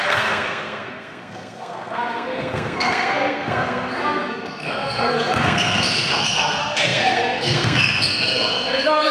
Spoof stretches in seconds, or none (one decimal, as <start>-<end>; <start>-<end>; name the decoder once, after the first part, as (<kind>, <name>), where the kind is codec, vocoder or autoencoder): 0.0-9.1 (codec, SNAC)